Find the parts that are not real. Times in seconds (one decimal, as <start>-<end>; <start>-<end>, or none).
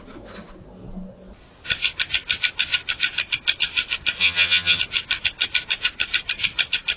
4.2-4.8